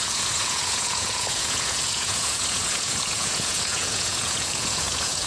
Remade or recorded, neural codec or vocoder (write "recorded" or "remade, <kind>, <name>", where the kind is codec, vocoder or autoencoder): remade, vocoder, Vocos